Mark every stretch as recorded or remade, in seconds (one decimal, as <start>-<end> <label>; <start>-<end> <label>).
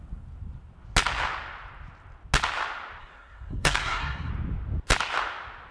0.0-3.0 recorded; 3.0-4.3 remade; 4.3-5.7 recorded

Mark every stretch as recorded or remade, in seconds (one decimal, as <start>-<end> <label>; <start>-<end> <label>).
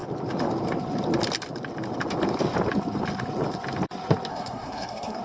0.0-4.3 recorded; 4.3-5.2 remade